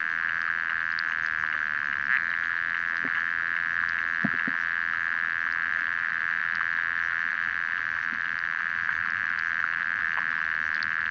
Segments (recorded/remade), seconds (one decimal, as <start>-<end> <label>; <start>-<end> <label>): 0.0-5.7 recorded; 5.7-6.4 remade; 6.4-7.3 recorded; 7.3-10.0 remade; 10.0-11.1 recorded